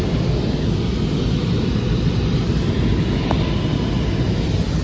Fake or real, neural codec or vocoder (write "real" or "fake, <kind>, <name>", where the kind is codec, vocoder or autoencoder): real